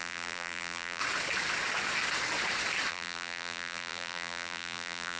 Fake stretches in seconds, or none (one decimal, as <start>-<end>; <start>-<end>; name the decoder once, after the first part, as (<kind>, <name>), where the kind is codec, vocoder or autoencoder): 0.0-1.0 (vocoder, BigVGAN v2); 2.9-5.2